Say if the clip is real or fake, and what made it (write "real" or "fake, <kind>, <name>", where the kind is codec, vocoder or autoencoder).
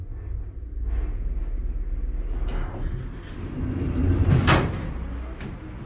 real